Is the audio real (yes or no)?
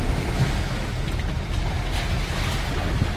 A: yes